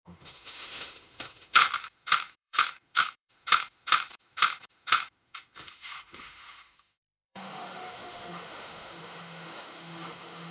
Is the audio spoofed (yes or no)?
yes